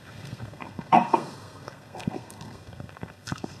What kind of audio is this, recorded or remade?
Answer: remade